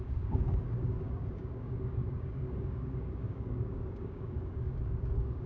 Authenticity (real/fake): fake